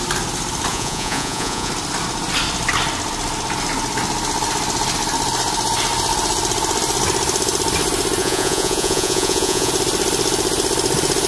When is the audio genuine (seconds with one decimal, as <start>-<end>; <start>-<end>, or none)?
0.0-0.7; 1.7-8.2; 9.7-11.3